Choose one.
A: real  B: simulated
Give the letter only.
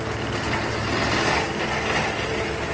A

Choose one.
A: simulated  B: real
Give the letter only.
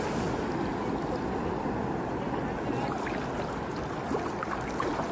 B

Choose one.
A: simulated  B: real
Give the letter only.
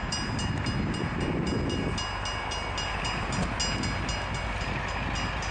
B